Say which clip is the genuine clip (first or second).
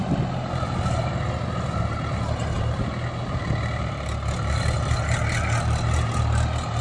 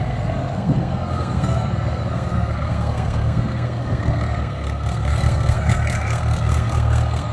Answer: first